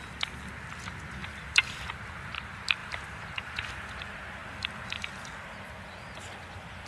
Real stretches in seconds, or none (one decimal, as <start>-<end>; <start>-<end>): 0.0-1.2; 1.9-2.8; 3.7-4.4; 5.1-6.9

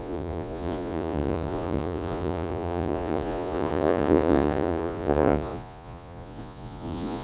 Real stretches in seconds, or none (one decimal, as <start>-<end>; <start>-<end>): none

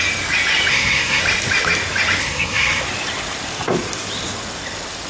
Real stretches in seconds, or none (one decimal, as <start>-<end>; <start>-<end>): 0.0-0.7; 1.2-2.2; 2.8-5.1

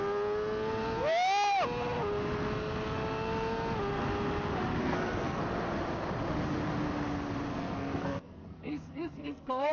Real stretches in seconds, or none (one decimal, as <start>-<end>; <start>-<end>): 0.0-4.8; 5.4-7.5

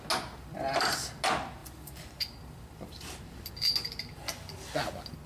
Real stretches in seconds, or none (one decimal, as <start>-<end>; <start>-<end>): 0.0-1.6; 3.5-5.3

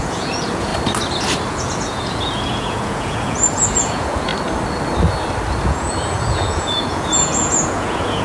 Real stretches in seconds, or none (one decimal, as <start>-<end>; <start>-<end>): 0.7-1.5; 4.3-5.6

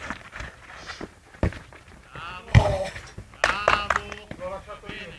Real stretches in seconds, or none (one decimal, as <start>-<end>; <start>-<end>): 0.0-2.5; 3.0-5.2